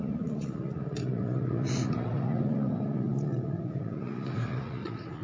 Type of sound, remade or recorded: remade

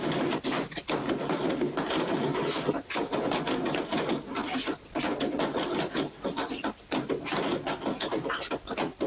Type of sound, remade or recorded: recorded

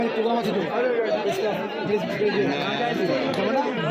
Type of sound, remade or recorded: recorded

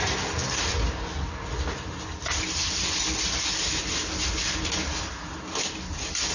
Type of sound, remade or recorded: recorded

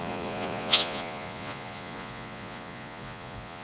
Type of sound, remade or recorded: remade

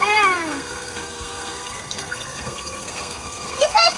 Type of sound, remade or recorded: remade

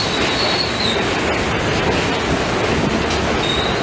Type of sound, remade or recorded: recorded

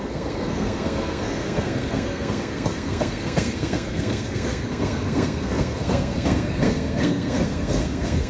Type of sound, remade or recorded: remade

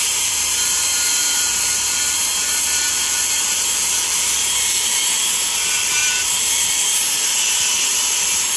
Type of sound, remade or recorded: remade